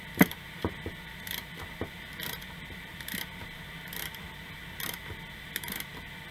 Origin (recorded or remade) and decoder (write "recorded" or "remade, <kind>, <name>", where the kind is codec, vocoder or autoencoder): recorded